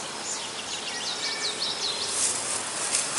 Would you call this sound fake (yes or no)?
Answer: no